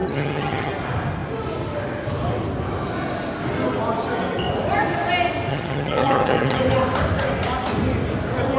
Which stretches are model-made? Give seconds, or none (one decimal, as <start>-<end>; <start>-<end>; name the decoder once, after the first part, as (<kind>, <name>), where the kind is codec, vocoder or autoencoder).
0.0-0.7 (vocoder, HiFi-GAN); 5.5-6.6